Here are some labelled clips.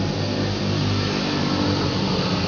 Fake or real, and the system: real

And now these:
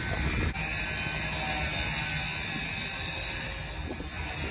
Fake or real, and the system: real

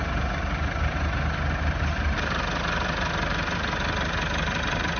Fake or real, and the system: real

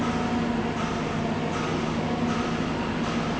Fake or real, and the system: real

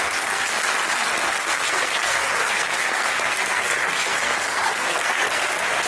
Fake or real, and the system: fake, codec, SNAC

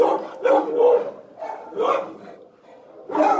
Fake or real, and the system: real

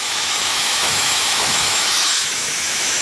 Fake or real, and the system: fake, autoencoder, DAC-VAE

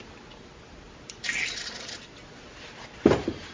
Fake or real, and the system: real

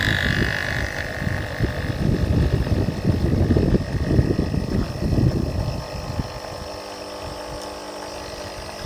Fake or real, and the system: real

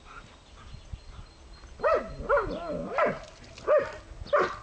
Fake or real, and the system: real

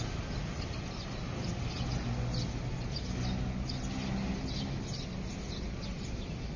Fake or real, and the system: real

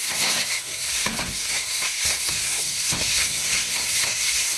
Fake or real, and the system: fake, codec, SNAC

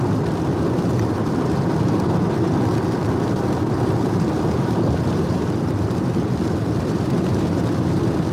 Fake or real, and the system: fake, vocoder, BigVGAN v2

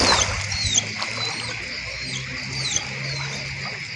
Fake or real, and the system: real